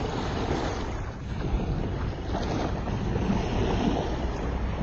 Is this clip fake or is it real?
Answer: real